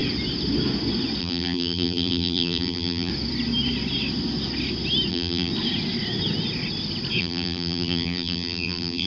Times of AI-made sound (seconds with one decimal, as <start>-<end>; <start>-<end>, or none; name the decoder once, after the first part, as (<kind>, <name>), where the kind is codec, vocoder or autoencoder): 1.2-3.1 (vocoder, BigVGAN v2); 5.1-5.5; 7.2-9.1